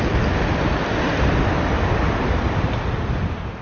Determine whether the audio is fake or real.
real